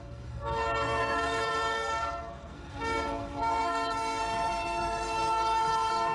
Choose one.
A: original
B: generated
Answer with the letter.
B